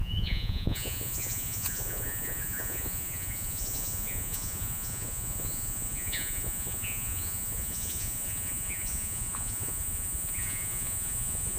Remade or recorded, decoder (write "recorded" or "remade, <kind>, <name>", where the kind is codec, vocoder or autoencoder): remade, vocoder, Vocos